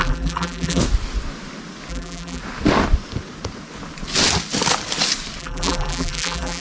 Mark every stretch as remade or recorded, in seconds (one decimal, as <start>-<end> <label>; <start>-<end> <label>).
0.0-0.8 remade; 0.8-1.9 recorded; 1.9-2.4 remade; 2.4-5.4 recorded; 5.4-6.6 remade